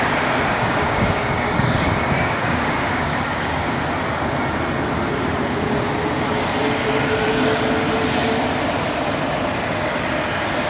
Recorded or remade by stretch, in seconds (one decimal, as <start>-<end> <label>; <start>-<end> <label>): 0.0-0.5 recorded; 0.5-3.8 remade; 3.8-10.7 recorded